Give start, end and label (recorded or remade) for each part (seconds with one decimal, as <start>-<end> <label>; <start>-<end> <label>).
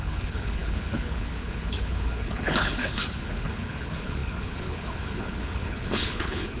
0.0-6.6 remade